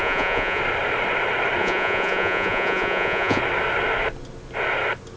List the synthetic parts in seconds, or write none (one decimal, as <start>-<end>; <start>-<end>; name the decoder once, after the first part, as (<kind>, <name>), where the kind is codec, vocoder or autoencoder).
0.0-0.6 (vocoder, Vocos); 1.6-3.4